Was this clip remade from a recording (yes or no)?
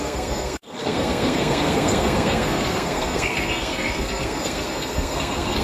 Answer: yes